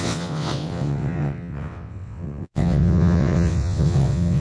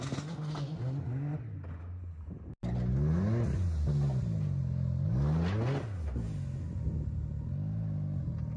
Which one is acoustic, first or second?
second